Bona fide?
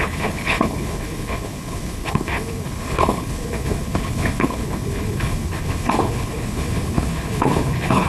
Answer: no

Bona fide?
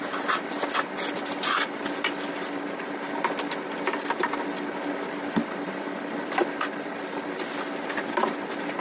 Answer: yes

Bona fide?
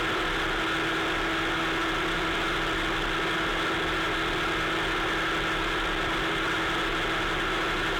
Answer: yes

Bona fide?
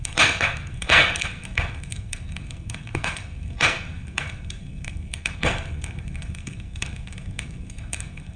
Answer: no